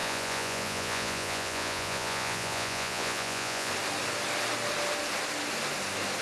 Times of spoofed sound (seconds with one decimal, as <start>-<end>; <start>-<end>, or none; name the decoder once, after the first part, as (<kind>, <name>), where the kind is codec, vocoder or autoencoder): 0.0-3.7 (vocoder, Vocos)